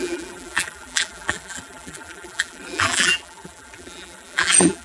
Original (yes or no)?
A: no